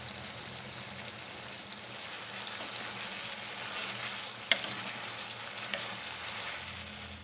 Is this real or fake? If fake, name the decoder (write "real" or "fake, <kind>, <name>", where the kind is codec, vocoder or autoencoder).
real